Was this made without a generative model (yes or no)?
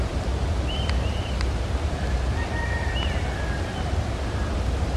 yes